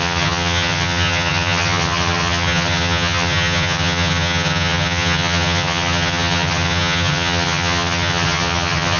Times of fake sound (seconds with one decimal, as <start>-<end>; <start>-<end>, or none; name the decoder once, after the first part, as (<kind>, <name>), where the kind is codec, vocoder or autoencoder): 0.0-9.0 (vocoder, HiFi-GAN)